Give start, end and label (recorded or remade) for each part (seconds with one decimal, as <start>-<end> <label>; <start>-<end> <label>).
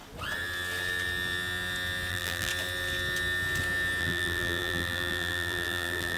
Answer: 0.0-2.1 recorded; 2.1-2.5 remade; 2.5-4.0 recorded; 4.0-6.2 remade